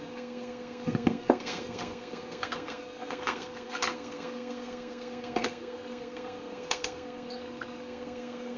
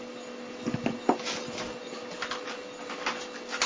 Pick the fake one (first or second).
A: first